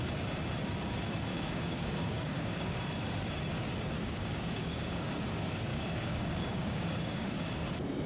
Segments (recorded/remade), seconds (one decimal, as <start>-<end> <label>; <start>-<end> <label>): 0.0-1.3 recorded; 1.3-2.8 remade; 2.8-4.2 recorded; 4.2-5.1 remade; 5.1-5.7 recorded; 5.7-7.3 remade; 7.3-8.1 recorded